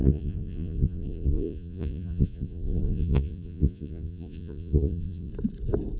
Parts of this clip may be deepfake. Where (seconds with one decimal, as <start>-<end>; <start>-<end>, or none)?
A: 0.0-5.3